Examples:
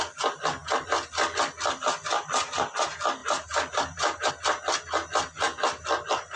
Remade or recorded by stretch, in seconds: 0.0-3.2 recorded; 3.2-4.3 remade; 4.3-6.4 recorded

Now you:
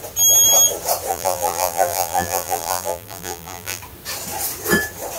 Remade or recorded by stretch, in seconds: 0.0-1.1 recorded; 1.1-3.8 remade; 3.8-5.2 recorded

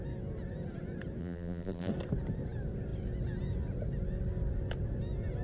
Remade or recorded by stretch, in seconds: 0.0-1.2 recorded; 1.2-1.9 remade; 1.9-5.4 recorded

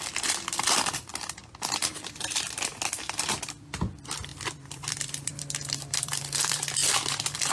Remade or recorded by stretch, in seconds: 0.0-1.1 remade; 1.1-1.9 recorded; 1.9-7.5 remade

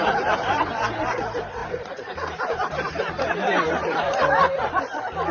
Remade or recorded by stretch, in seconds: 0.0-0.7 remade; 0.7-1.6 recorded; 1.6-4.8 remade; 4.8-5.3 recorded